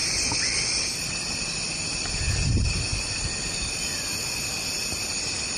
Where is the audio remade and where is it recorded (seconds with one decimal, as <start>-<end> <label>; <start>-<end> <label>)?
0.0-0.6 remade; 0.6-1.4 recorded; 1.4-2.2 remade; 2.2-5.6 recorded